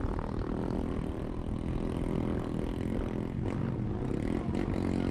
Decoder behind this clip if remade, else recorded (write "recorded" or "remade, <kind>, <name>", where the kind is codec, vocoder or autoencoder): recorded